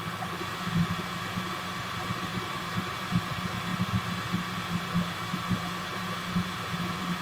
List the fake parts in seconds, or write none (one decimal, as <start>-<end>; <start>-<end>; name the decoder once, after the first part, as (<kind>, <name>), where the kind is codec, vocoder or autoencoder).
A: none